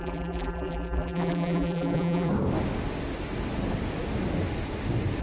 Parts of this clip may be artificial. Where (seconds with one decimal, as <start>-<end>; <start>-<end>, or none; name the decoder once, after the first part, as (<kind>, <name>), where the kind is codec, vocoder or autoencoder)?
0.0-2.3 (vocoder, BigVGAN v2)